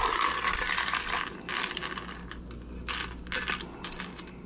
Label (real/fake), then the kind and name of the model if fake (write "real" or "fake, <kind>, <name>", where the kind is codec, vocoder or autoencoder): real